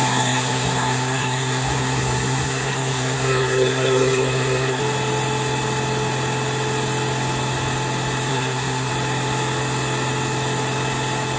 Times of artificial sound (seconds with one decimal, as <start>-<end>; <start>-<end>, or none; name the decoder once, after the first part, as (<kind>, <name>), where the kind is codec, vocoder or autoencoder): 0.0-4.8 (codec, SNAC); 8.3-8.9